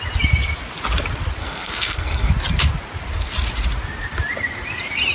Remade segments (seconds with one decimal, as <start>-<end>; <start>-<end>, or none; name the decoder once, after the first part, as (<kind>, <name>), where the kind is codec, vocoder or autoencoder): 1.4-2.3 (codec, SNAC)